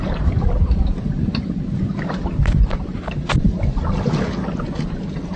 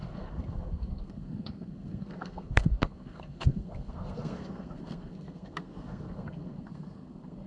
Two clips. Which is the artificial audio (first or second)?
second